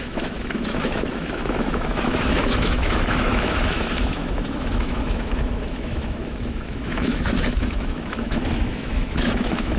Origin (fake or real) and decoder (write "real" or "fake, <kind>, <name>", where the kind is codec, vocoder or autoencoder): fake, autoencoder, DAC-VAE